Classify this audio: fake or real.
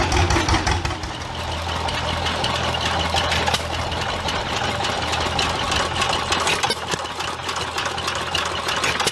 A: real